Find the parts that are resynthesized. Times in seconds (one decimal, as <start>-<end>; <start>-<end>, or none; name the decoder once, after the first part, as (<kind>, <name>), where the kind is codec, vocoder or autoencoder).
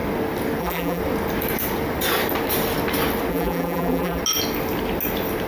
0.6-1.0 (vocoder, BigVGAN v2); 3.3-4.2